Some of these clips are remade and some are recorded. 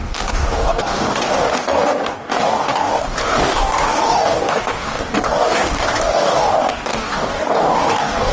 remade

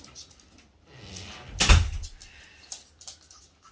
recorded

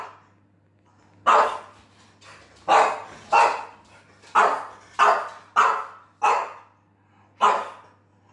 recorded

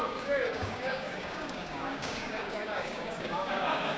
remade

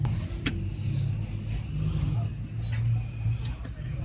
recorded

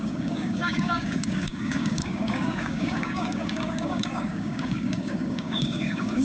remade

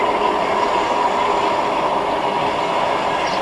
recorded